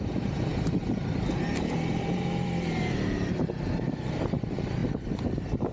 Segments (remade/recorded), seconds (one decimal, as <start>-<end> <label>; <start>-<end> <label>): 0.0-4.8 remade; 4.8-5.3 recorded; 5.3-5.7 remade